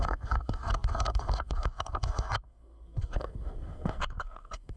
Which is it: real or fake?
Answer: fake